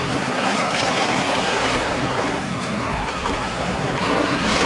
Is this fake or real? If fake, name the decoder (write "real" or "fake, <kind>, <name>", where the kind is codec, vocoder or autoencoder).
fake, codec, SNAC